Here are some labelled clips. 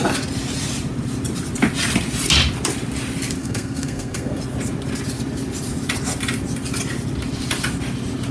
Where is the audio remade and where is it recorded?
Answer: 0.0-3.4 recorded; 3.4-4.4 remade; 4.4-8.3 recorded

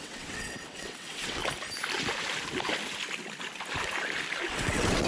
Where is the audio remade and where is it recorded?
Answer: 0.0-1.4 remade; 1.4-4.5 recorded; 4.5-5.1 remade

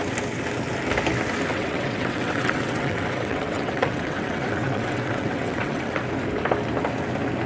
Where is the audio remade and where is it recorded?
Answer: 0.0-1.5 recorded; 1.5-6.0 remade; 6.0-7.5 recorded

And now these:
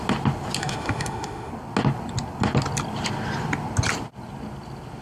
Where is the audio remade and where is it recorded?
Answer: 0.0-0.6 recorded; 0.6-1.5 remade; 1.5-5.0 recorded